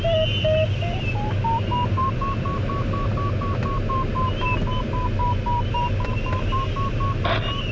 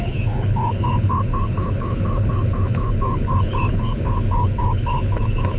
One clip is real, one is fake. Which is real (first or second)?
first